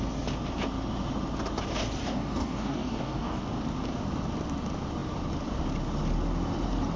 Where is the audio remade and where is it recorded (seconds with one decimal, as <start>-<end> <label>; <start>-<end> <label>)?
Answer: 0.0-2.0 recorded; 2.0-3.4 remade; 3.4-7.0 recorded